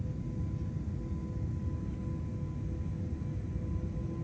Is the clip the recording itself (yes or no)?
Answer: yes